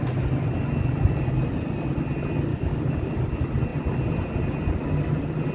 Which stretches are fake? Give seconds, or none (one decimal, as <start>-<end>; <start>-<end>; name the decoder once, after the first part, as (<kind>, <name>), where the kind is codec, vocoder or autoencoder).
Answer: 2.5-3.1 (codec, DAC)